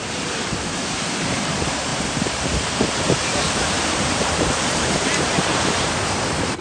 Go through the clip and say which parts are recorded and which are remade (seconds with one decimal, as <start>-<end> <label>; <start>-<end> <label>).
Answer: 0.0-6.6 remade